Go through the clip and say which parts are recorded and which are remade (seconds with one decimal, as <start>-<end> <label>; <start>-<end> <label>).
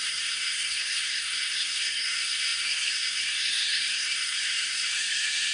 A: 0.0-5.5 remade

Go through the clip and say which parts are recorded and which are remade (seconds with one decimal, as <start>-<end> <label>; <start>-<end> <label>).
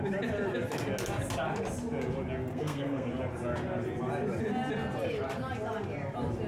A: 0.0-2.5 recorded; 2.5-3.1 remade; 3.1-6.5 recorded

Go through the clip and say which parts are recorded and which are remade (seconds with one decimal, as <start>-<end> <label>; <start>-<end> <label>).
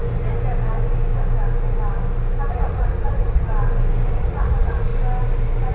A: 0.0-2.5 recorded; 2.5-3.5 remade; 3.5-4.1 recorded; 4.1-4.9 remade; 4.9-5.7 recorded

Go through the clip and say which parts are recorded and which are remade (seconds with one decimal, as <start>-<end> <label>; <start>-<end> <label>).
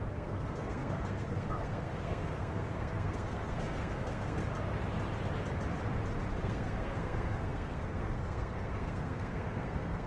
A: 0.0-4.4 remade; 4.4-6.4 recorded; 6.4-10.1 remade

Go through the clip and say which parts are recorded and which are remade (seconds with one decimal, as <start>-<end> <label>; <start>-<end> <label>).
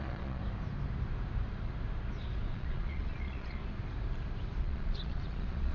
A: 0.0-0.4 remade; 0.4-2.5 recorded; 2.5-3.6 remade; 3.6-4.6 recorded; 4.6-5.7 remade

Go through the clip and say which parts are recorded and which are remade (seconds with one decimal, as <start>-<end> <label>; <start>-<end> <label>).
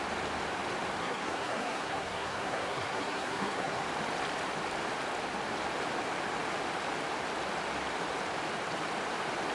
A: 0.0-1.0 recorded; 1.0-3.8 remade; 3.8-9.5 recorded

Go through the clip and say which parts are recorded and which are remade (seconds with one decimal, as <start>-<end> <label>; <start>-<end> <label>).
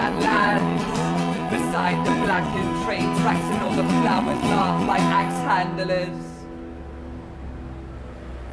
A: 0.0-2.6 remade; 2.6-3.3 recorded; 3.3-5.4 remade; 5.4-8.5 recorded